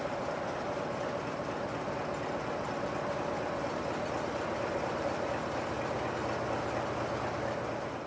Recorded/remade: recorded